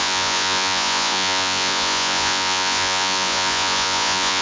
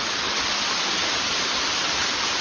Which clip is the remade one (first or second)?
first